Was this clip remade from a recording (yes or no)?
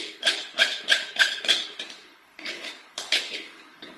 yes